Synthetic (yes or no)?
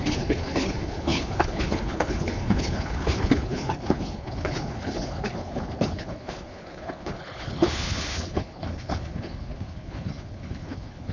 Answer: yes